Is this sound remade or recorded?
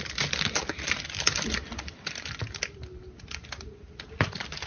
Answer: recorded